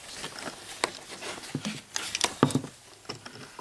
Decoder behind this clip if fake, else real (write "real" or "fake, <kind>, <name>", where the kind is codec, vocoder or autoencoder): real